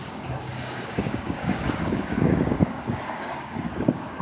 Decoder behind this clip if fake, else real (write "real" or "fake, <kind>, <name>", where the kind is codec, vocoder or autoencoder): fake, codec, DAC